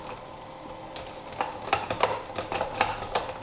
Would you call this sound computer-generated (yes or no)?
no